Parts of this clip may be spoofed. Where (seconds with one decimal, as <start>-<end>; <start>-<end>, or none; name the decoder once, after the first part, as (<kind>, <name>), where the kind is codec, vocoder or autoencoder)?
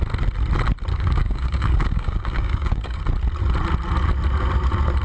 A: 0.9-3.0 (codec, DAC)